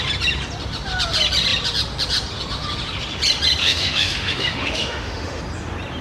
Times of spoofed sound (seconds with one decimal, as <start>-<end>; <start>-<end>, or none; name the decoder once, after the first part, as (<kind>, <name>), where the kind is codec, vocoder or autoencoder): 3.6-5.4 (autoencoder, DAC-VAE)